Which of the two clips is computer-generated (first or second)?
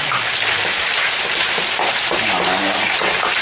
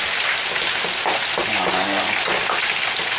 first